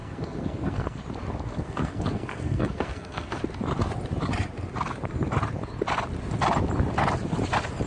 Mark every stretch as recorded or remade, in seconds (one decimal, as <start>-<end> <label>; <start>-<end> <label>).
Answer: 0.0-1.0 remade; 1.0-1.5 recorded; 1.5-3.4 remade; 3.4-7.9 recorded